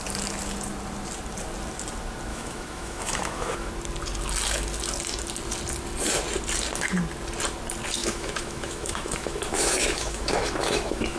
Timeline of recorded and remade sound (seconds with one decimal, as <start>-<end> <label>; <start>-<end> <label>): 0.0-2.3 recorded; 2.3-3.7 remade; 3.7-8.0 recorded; 8.0-11.2 remade